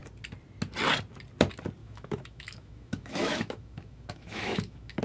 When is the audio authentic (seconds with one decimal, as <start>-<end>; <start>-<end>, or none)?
0.0-1.8

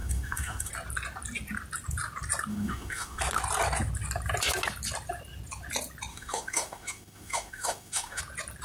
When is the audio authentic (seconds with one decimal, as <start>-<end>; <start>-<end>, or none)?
0.7-2.5; 3.2-6.1; 8.2-8.6